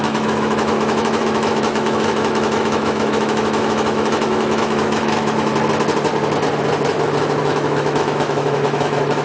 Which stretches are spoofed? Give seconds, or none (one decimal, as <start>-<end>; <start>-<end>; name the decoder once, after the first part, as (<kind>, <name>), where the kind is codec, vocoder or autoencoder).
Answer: 0.0-5.5 (autoencoder, DAC-VAE); 7.4-9.2